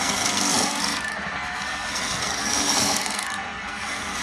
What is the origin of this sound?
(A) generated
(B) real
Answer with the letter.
A